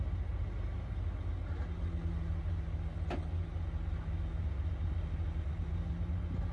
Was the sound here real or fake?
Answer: real